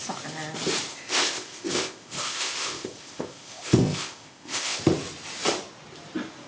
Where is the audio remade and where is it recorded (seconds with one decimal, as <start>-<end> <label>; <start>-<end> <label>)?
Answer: 0.0-0.9 recorded; 0.9-4.8 remade; 4.8-6.5 recorded